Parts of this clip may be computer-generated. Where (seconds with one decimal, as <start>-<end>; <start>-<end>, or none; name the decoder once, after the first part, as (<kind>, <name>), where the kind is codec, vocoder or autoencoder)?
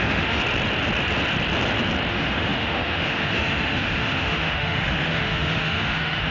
0.0-0.4 (autoencoder, DAC-VAE); 2.1-6.3